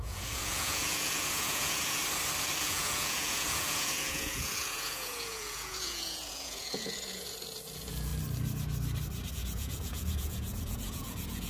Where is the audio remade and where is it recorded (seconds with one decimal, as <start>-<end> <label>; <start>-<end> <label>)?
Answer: 0.0-2.0 remade; 2.0-2.6 recorded; 2.6-8.1 remade; 8.1-9.3 recorded; 9.3-11.5 remade